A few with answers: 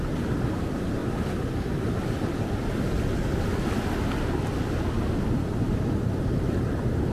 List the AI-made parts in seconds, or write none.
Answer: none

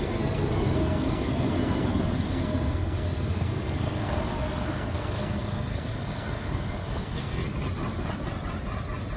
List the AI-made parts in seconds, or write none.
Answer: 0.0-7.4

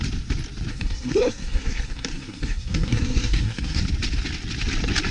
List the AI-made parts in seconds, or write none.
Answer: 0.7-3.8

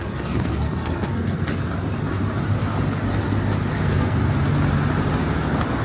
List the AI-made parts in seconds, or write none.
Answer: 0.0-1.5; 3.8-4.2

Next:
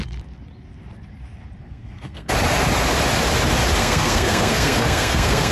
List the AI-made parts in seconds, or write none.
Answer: 1.6-2.3; 3.8-5.5